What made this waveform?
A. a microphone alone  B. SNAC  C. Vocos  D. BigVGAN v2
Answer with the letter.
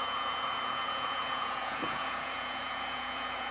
C